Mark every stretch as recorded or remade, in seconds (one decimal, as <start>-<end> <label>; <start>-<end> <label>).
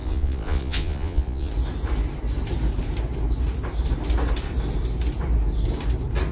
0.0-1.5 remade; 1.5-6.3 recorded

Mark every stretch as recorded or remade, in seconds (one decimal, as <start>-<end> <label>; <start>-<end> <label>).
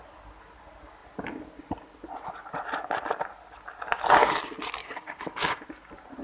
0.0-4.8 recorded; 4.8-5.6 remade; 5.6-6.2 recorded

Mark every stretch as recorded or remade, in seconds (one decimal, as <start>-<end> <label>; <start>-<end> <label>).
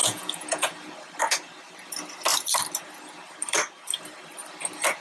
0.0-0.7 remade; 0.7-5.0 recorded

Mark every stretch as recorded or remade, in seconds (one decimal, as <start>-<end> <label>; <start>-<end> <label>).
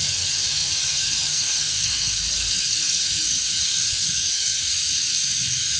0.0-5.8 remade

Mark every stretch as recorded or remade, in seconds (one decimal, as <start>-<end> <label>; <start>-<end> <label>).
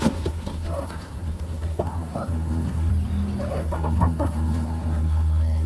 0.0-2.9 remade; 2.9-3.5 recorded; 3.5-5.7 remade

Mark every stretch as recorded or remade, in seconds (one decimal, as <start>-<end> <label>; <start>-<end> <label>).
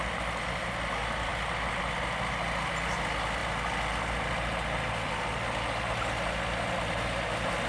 0.0-7.7 recorded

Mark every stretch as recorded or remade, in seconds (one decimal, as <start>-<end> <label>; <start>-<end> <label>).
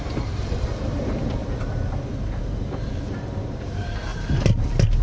0.0-4.1 remade; 4.1-5.0 recorded